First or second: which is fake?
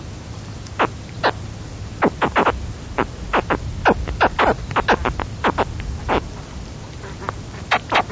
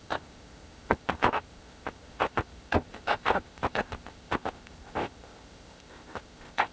second